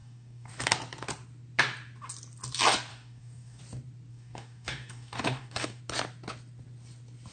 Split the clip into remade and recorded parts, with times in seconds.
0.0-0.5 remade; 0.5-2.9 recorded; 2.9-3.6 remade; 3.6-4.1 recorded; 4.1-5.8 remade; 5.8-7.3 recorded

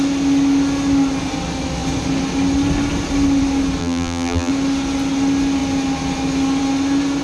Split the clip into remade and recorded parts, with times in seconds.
0.0-3.8 recorded; 3.8-4.5 remade; 4.5-7.2 recorded

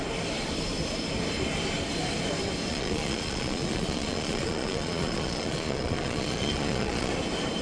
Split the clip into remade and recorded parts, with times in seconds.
0.0-2.7 recorded; 2.7-7.1 remade; 7.1-7.6 recorded

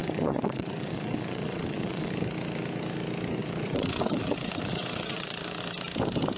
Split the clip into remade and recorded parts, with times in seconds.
0.0-2.1 remade; 2.1-3.4 recorded; 3.4-5.6 remade; 5.6-6.4 recorded

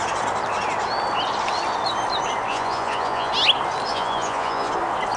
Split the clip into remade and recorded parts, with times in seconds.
0.0-2.5 recorded; 2.5-3.3 remade; 3.3-3.9 recorded; 3.9-4.7 remade; 4.7-5.2 recorded

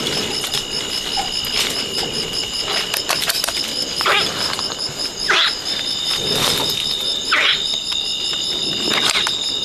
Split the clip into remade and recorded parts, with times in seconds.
0.0-9.6 recorded

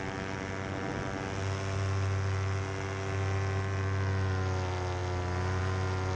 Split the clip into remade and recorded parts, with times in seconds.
0.0-6.2 recorded

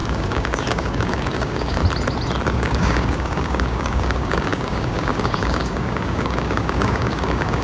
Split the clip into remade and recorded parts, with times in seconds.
0.0-1.8 remade; 1.8-2.4 recorded; 2.4-7.6 remade